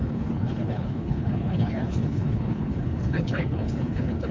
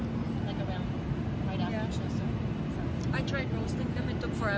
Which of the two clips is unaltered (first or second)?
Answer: second